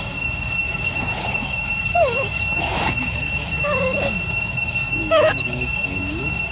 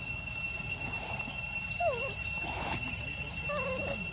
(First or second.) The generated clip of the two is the first